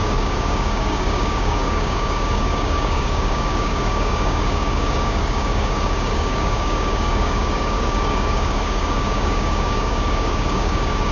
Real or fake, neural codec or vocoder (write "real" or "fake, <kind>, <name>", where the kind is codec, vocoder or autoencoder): fake, codec, DAC